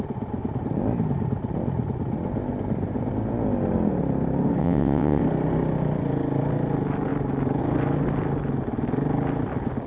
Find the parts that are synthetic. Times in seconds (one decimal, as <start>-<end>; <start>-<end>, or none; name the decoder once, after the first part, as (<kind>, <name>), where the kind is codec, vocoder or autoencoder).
4.6-5.2 (vocoder, WaveNeXt)